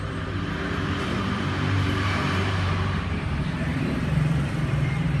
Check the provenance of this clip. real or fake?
fake